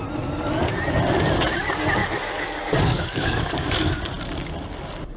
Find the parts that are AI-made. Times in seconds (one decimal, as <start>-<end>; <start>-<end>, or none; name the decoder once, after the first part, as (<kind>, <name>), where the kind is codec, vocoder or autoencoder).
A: 2.0-4.0 (codec, DAC)